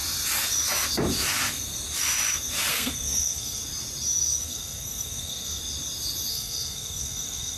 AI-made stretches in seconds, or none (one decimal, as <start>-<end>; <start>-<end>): 2.7-3.6; 4.4-5.6; 6.3-7.6